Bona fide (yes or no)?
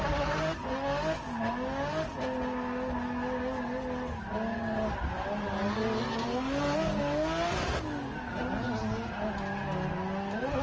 yes